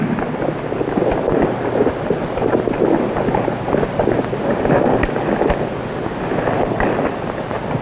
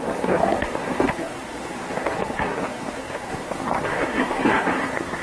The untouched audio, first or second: first